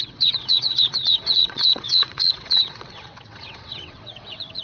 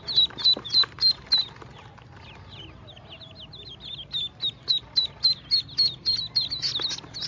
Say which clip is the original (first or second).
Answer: second